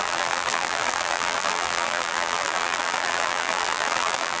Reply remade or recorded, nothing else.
remade